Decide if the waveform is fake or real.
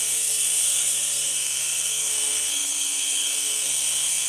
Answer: fake